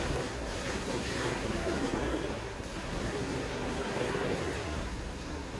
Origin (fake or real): fake